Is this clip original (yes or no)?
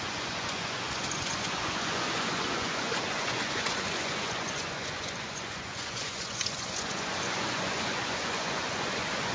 no